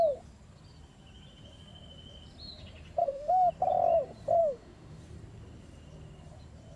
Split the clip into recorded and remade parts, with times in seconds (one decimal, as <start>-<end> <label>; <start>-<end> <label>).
0.0-3.0 recorded; 3.0-3.5 remade; 3.5-4.4 recorded; 4.4-5.0 remade; 5.0-6.8 recorded